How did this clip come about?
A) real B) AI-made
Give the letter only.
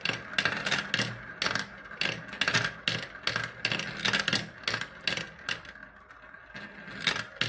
A